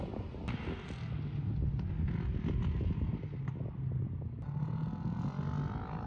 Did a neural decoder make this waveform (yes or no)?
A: no